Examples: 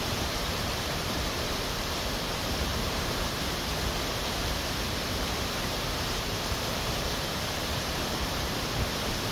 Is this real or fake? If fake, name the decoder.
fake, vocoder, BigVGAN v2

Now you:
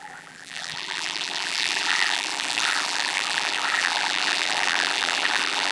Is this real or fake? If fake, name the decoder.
fake, vocoder, BigVGAN v2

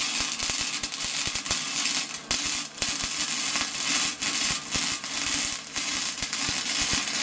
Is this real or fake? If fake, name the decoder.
real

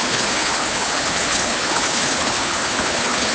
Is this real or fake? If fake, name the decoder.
fake, codec, HILCodec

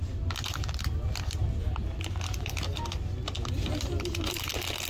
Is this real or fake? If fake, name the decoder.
real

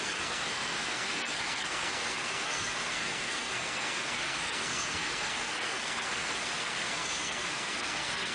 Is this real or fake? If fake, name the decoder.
fake, codec, SNAC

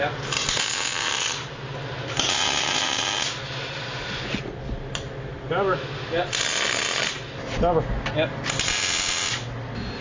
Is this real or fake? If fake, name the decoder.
real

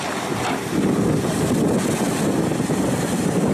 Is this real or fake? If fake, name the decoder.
real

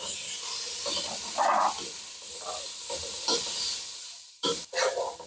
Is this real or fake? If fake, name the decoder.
real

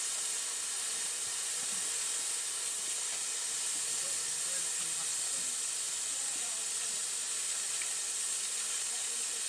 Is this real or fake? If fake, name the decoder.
real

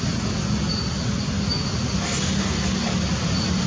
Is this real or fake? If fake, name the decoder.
real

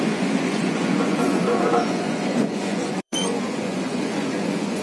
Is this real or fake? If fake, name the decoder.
fake, vocoder, Vocos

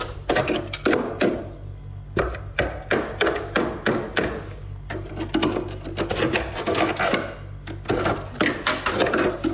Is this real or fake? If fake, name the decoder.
real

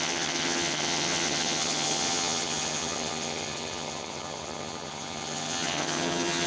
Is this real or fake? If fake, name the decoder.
fake, vocoder, HiFi-GAN